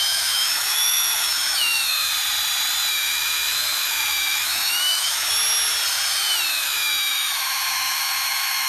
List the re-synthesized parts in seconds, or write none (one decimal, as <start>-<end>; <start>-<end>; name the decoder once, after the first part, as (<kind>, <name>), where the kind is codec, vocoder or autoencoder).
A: 0.0-2.1 (autoencoder, DAC-VAE); 2.9-5.3; 6.5-8.7